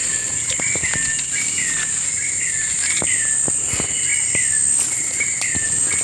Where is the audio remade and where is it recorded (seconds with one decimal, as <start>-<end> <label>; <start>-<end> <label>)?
0.0-0.6 remade; 0.6-6.0 recorded